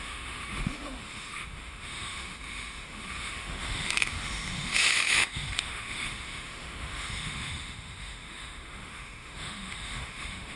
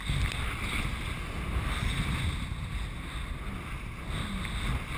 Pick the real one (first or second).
second